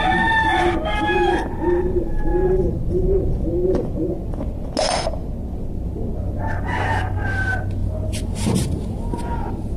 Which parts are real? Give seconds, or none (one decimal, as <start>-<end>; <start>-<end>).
0.0-2.3; 3.2-7.8; 9.2-9.8